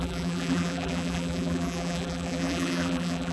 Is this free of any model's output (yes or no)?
no